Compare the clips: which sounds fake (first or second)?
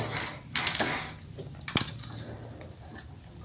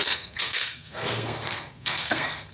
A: second